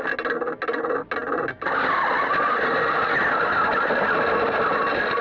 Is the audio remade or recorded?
recorded